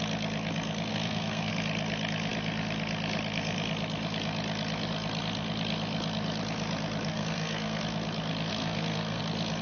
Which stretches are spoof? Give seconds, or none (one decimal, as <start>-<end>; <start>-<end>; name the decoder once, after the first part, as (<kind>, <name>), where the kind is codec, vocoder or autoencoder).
0.9-1.5 (codec, SNAC); 7.1-7.8; 8.5-9.2